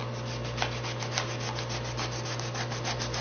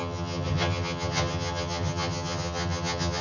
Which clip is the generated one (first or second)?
second